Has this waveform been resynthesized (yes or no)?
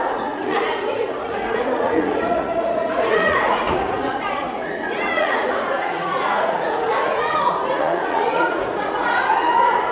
yes